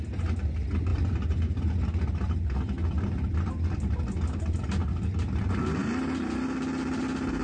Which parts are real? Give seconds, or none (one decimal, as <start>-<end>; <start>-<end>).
0.0-7.4